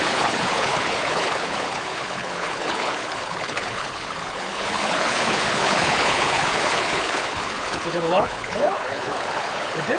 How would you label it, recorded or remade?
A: remade